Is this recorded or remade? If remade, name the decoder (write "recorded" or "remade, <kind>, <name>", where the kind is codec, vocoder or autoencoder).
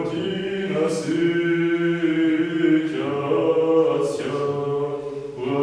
recorded